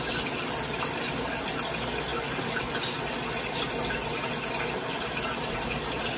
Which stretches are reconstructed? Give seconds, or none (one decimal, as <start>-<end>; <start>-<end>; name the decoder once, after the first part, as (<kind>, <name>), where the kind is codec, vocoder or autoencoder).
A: none